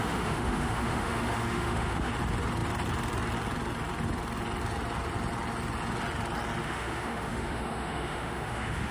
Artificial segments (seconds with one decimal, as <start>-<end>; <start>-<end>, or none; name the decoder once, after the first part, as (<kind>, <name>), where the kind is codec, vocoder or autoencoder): 0.0-2.1 (autoencoder, DAC-VAE); 6.6-8.9